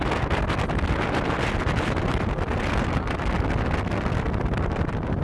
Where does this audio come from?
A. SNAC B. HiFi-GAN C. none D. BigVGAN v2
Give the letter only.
C